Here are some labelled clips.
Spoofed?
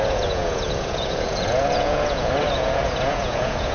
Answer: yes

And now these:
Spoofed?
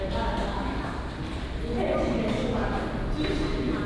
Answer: no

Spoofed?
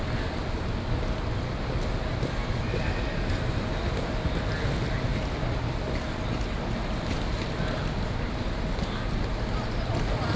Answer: no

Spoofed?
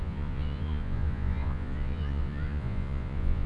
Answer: yes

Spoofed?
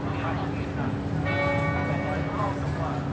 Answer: no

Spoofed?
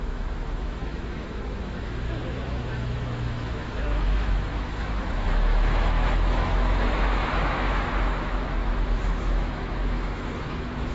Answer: yes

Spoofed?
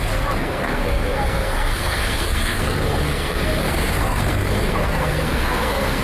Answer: yes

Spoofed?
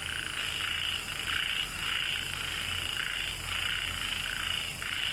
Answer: no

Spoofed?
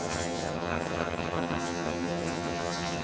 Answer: yes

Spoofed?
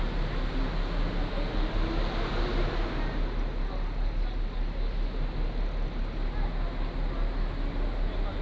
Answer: no